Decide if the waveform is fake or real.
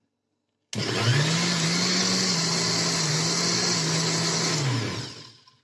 real